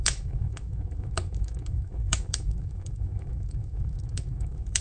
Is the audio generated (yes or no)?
yes